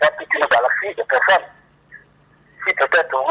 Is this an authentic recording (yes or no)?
yes